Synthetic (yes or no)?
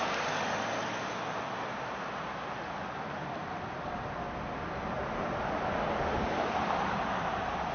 no